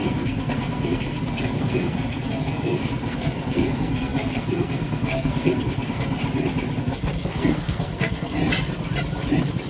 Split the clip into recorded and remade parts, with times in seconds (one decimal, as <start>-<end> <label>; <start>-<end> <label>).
0.0-6.2 remade; 6.2-6.8 recorded; 6.8-8.4 remade; 8.4-9.7 recorded